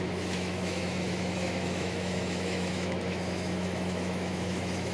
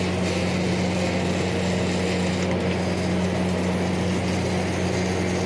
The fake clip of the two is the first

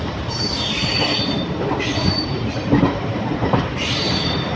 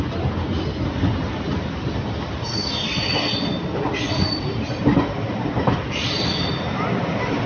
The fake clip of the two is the first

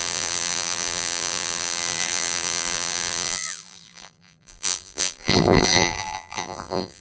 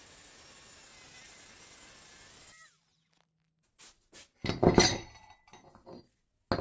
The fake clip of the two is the first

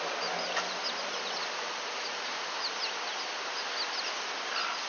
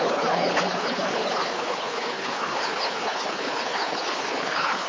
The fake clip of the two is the second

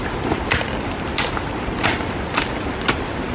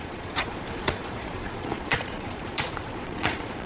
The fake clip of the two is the second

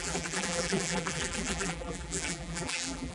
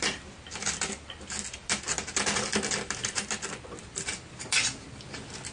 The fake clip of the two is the first